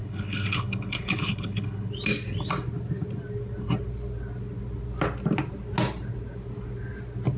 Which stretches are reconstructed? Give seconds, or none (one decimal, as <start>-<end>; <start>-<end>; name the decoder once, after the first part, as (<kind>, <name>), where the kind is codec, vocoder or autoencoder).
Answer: 0.0-1.9 (codec, HILCodec)